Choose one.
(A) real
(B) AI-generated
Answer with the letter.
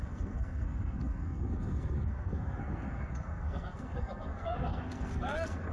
B